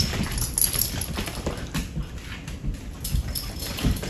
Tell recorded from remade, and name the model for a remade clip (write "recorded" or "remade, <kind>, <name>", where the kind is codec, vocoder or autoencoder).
recorded